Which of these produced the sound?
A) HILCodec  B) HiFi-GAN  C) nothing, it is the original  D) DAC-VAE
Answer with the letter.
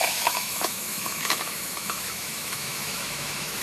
D